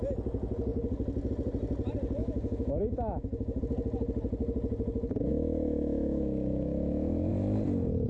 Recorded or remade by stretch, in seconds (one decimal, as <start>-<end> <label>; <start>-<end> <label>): 0.0-2.2 recorded; 2.2-3.6 remade; 3.6-5.3 recorded; 5.3-7.3 remade; 7.3-8.1 recorded